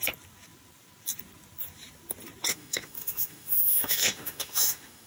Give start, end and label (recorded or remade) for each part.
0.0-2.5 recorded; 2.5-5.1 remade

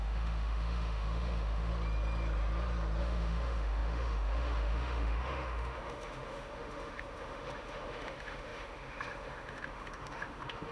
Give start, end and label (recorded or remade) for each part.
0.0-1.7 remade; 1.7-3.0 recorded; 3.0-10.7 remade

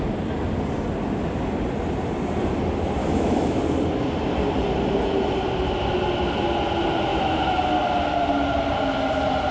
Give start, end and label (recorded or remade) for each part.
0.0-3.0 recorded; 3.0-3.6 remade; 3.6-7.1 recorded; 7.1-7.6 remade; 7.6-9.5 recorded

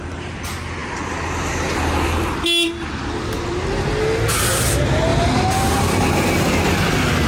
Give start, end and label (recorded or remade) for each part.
0.0-7.3 recorded

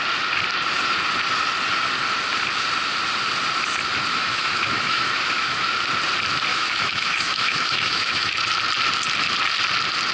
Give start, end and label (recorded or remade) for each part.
0.0-4.1 recorded; 4.1-5.6 remade; 5.6-6.5 recorded; 6.5-8.4 remade; 8.4-10.1 recorded

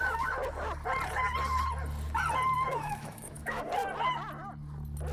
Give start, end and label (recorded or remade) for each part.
0.0-2.7 recorded; 2.7-3.7 remade; 3.7-5.1 recorded